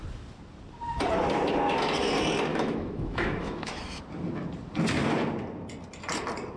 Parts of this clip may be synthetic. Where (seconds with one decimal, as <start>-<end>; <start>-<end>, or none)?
2.5-4.0